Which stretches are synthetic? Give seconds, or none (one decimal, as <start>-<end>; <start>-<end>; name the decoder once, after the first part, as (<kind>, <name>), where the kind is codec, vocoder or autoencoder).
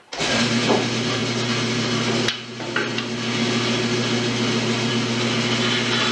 none